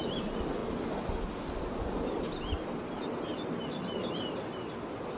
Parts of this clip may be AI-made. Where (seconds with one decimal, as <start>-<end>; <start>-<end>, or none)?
none